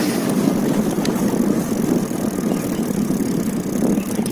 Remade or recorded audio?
recorded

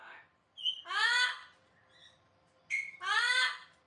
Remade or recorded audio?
recorded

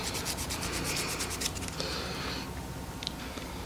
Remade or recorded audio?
recorded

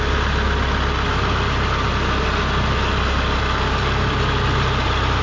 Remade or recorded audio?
recorded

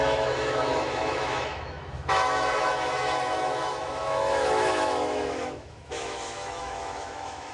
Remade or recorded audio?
remade